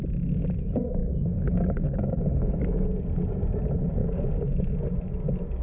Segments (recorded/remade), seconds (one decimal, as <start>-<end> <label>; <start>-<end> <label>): 0.0-1.0 recorded; 1.0-3.6 remade; 3.6-4.0 recorded; 4.0-4.7 remade; 4.7-5.6 recorded